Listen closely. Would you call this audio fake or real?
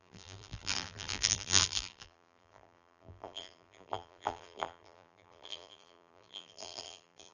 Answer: fake